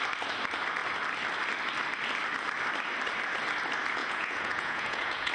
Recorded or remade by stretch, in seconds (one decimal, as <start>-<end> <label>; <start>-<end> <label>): 0.0-4.0 recorded; 4.0-5.3 remade